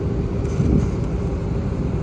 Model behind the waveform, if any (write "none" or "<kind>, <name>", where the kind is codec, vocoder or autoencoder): none